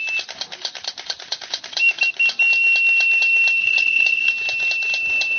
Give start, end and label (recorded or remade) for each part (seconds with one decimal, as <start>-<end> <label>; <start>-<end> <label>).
0.0-3.6 recorded; 3.6-4.3 remade; 4.3-5.4 recorded